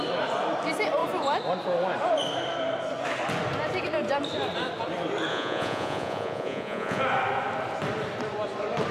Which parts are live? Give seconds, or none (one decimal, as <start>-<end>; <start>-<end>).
0.0-5.3; 7.0-8.9

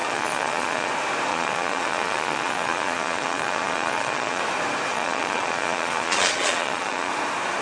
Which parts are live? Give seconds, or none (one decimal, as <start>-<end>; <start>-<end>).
0.9-1.3; 4.4-4.9; 7.1-7.6

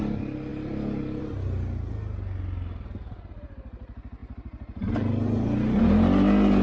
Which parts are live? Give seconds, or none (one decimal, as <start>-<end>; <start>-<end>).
0.0-6.6

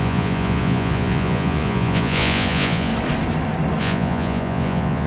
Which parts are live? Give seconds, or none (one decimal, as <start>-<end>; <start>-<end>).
2.9-3.8

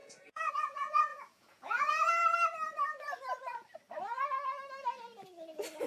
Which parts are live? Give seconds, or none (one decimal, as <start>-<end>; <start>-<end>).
2.2-5.9

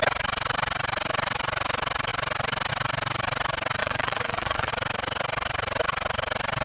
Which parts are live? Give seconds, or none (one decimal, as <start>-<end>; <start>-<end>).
0.0-3.8; 4.7-6.6